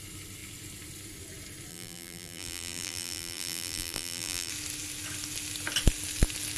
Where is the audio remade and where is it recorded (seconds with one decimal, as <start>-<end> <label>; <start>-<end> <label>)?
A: 0.0-1.7 recorded; 1.7-4.5 remade; 4.5-6.6 recorded